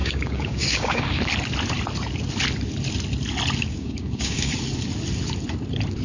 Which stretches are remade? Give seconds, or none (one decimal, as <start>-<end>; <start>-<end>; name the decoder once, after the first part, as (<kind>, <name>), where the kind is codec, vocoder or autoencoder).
0.0-1.2 (codec, DAC); 3.7-4.5

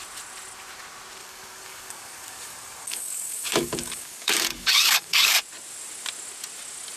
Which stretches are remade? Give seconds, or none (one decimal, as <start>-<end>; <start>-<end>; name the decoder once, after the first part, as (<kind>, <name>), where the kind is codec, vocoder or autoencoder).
1.2-5.4 (codec, DAC)

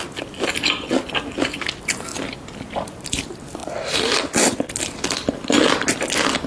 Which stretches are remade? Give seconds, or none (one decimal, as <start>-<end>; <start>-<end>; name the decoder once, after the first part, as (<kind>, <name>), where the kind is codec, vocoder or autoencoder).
none

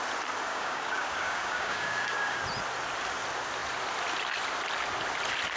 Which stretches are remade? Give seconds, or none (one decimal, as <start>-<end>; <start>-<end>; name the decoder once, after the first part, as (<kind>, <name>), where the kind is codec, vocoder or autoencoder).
0.5-2.4 (codec, DAC)

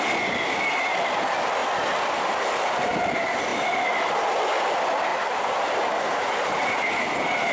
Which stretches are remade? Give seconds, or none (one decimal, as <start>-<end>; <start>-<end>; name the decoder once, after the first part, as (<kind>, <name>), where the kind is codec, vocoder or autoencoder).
none

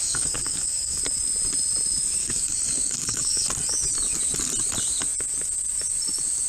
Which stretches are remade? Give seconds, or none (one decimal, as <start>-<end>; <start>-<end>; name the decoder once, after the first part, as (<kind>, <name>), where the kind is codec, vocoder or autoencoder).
0.0-1.0 (codec, DAC); 2.2-3.5

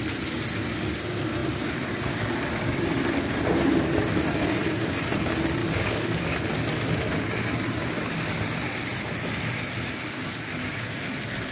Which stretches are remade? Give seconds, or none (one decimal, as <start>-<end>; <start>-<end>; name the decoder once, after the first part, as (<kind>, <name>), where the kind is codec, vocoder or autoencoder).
5.6-6.3 (codec, DAC)